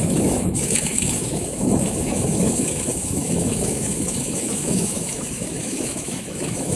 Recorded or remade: remade